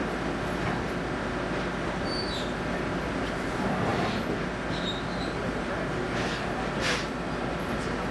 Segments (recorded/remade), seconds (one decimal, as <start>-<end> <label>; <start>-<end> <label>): 0.0-3.1 recorded; 3.1-3.9 remade; 3.9-8.1 recorded

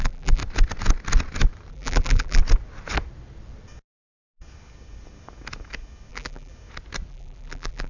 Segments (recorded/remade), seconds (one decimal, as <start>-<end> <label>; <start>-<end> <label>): 0.0-0.4 remade; 0.4-1.7 recorded; 1.7-2.4 remade; 2.4-6.1 recorded; 6.1-6.5 remade; 6.5-7.1 recorded; 7.1-7.9 remade

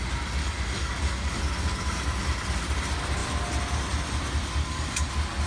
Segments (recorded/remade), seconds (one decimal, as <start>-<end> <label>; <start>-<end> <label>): 0.0-0.4 recorded; 0.4-1.4 remade; 1.4-4.6 recorded; 4.6-5.1 remade; 5.1-5.5 recorded

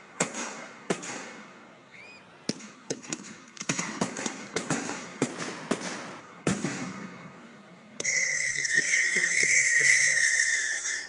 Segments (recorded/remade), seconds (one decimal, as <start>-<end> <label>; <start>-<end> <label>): 0.0-2.0 remade; 2.0-2.6 recorded; 2.6-5.3 remade; 5.3-6.2 recorded; 6.2-11.1 remade

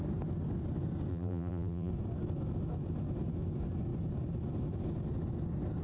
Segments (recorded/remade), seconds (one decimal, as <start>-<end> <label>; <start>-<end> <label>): 0.0-1.1 recorded; 1.1-1.9 remade; 1.9-5.8 recorded